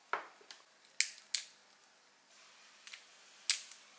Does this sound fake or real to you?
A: real